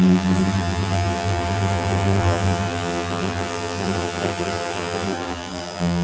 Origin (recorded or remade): remade